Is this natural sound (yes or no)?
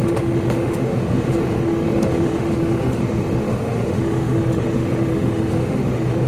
no